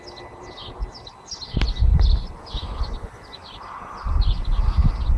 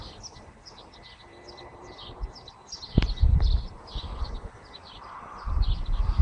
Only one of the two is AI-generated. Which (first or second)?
second